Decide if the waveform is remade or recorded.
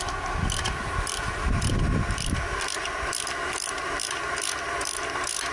recorded